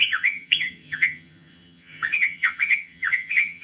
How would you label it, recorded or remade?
remade